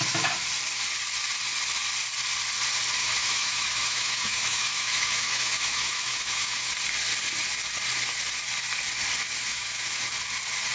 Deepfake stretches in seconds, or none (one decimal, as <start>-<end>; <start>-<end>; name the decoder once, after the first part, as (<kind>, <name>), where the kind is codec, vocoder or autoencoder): 3.0-6.7 (autoencoder, DAC-VAE); 9.5-10.1